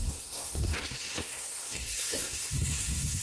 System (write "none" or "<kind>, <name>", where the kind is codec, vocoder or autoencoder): codec, SNAC